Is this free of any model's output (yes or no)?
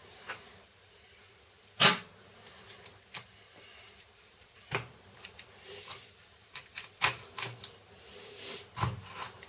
no